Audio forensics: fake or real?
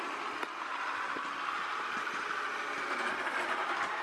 real